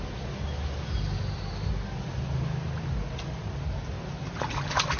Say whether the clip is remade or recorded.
recorded